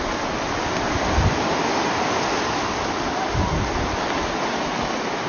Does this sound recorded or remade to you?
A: recorded